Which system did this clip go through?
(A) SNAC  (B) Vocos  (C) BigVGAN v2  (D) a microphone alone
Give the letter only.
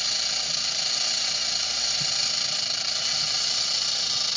D